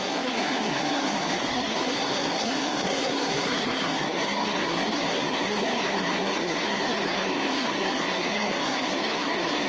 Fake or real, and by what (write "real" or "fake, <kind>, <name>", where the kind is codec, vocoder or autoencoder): fake, codec, SNAC